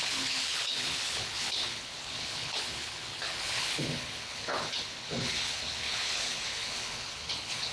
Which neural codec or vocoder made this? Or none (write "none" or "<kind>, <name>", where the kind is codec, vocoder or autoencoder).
codec, HILCodec